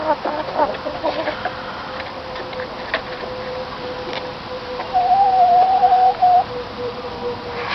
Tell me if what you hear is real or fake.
fake